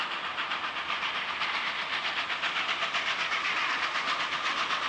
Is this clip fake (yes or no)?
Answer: no